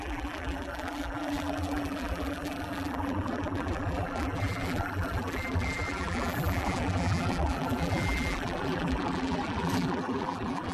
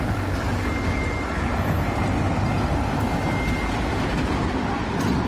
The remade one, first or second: first